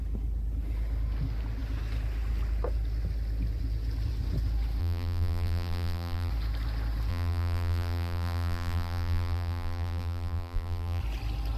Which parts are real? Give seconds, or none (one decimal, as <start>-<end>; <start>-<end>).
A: 0.0-4.8; 6.3-7.1; 11.0-11.6